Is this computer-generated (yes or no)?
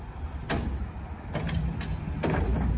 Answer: no